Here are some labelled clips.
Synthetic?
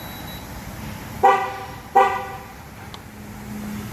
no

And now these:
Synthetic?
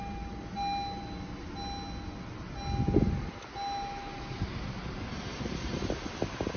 no